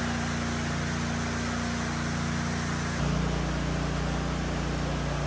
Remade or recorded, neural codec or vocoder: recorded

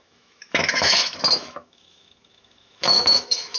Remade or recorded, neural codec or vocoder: remade, autoencoder, DAC-VAE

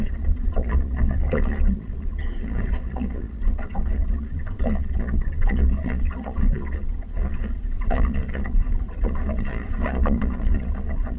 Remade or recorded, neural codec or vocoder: remade, vocoder, Vocos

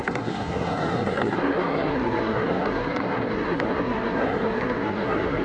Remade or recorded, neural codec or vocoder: remade, codec, SNAC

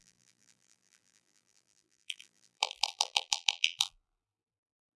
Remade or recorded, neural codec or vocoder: remade, vocoder, BigVGAN v2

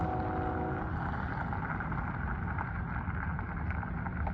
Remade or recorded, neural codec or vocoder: recorded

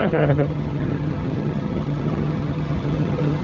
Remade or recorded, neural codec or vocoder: remade, vocoder, HiFi-GAN